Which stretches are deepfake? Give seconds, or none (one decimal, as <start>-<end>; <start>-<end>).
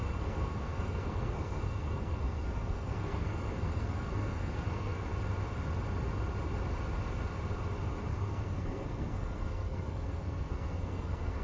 0.0-5.1; 8.1-11.4